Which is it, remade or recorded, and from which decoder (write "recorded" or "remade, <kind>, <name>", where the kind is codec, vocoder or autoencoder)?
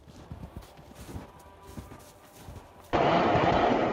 recorded